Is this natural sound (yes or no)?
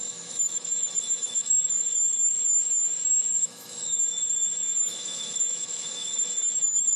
no